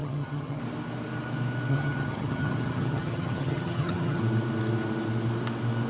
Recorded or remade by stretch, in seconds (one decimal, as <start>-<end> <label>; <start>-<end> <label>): 0.0-0.6 remade; 0.6-1.7 recorded; 1.7-4.2 remade; 4.2-5.9 recorded